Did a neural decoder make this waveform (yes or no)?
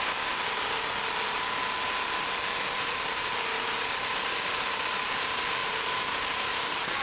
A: no